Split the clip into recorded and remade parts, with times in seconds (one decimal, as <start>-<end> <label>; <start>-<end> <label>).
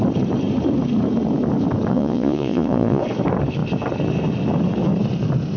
0.0-1.9 recorded; 1.9-3.0 remade; 3.0-5.6 recorded